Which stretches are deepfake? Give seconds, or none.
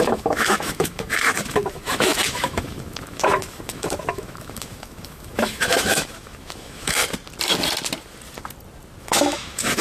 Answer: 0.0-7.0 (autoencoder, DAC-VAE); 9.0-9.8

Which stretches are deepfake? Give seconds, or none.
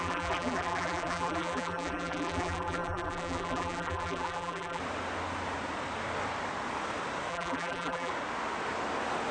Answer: 0.0-4.8 (vocoder, BigVGAN v2); 7.3-8.1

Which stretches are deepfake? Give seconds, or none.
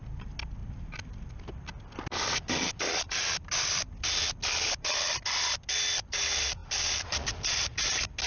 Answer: none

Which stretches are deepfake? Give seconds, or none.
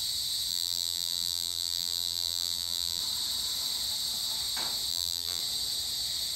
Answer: 0.5-3.0 (vocoder, BigVGAN v2); 4.9-5.4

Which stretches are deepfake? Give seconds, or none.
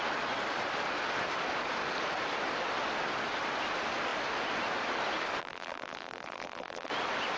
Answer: 5.4-6.9 (vocoder, BigVGAN v2)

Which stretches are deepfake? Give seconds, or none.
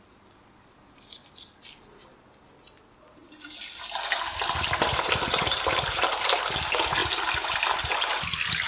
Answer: none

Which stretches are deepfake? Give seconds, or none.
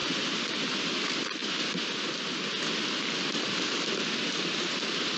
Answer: 0.0-0.5 (vocoder, BigVGAN v2)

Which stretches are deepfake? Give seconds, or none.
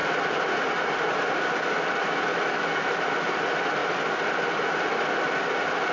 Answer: 2.3-2.9 (autoencoder, DAC-VAE)